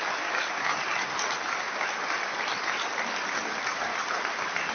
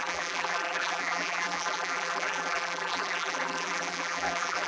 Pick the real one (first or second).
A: first